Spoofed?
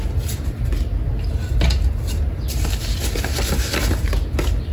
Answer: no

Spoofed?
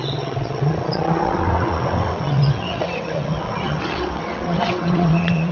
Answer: yes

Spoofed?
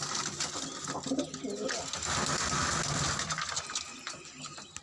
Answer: no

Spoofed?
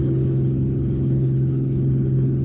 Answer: yes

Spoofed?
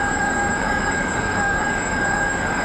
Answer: yes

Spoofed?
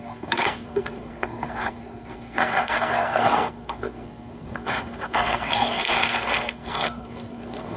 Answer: yes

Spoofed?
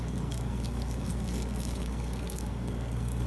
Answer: yes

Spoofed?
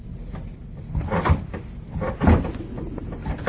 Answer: no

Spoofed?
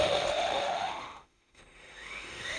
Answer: yes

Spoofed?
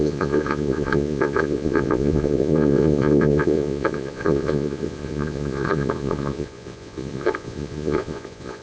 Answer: yes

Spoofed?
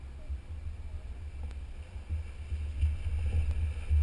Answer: no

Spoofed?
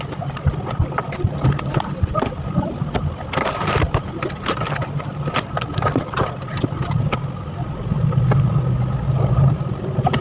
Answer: no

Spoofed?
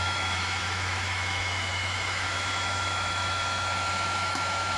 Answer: yes